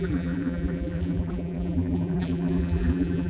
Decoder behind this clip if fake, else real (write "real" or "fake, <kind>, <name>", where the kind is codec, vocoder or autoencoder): fake, vocoder, BigVGAN v2